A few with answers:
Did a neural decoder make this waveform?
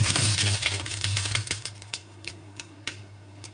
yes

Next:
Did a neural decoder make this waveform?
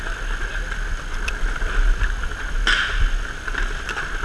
no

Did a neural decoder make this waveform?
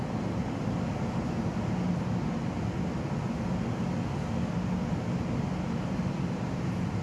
no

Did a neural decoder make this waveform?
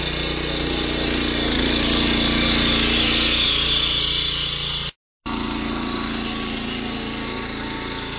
no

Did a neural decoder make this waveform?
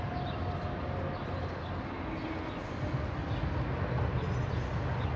no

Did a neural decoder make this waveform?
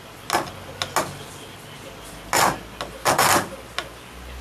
no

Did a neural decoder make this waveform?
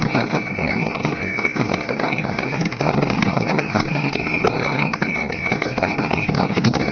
yes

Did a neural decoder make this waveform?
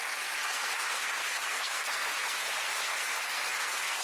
yes